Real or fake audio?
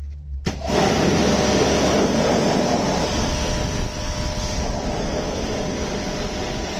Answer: real